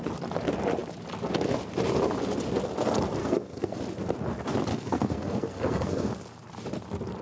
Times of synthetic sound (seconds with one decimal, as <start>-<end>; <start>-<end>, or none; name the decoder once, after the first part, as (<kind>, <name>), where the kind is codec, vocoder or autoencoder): 3.2-3.8 (codec, SNAC); 4.7-6.1